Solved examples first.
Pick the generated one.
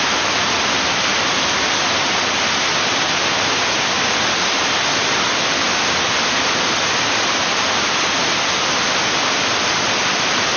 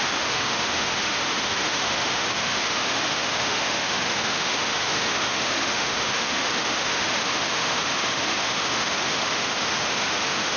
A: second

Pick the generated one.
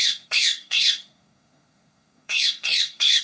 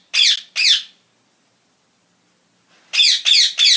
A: first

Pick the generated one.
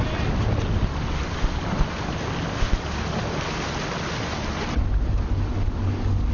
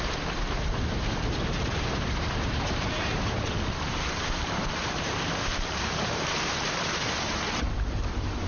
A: second